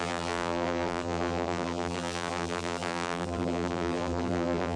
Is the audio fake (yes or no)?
yes